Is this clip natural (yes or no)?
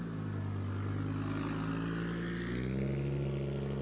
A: yes